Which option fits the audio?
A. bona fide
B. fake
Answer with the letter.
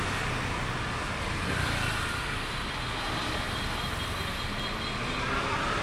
A